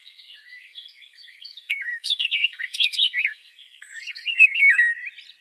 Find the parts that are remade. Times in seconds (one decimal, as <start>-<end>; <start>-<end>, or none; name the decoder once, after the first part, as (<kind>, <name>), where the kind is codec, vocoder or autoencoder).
0.0-4.9 (codec, SNAC)